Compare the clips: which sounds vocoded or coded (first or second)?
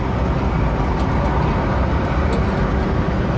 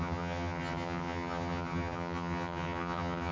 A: second